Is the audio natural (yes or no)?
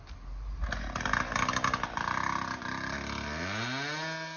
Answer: yes